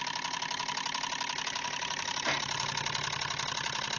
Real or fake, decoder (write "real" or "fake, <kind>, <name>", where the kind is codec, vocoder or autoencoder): real